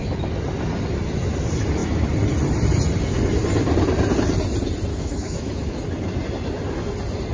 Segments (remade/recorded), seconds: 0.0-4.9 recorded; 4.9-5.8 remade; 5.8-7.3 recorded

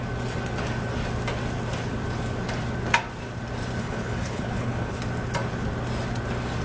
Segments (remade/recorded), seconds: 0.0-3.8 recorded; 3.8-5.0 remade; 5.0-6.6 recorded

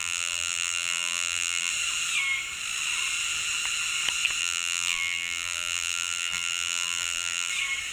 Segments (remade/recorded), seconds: 0.0-1.7 remade; 1.7-4.4 recorded; 4.4-7.5 remade; 7.5-7.9 recorded